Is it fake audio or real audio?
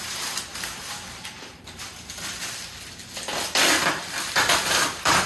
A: fake